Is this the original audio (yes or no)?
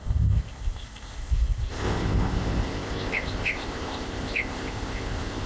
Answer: no